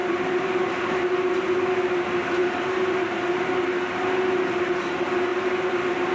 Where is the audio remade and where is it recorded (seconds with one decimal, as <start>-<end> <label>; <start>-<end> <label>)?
0.0-0.7 remade; 0.7-5.3 recorded; 5.3-6.1 remade